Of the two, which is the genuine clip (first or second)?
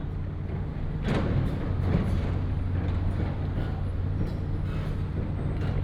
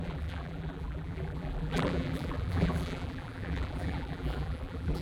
first